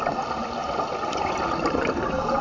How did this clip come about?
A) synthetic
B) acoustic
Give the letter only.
B